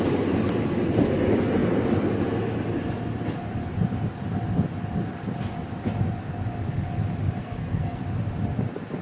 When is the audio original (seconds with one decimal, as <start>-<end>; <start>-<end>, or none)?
0.0-7.4; 8.0-9.0